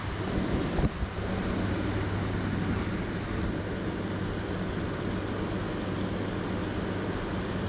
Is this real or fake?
real